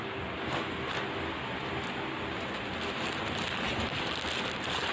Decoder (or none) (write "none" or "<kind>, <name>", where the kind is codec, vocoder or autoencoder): none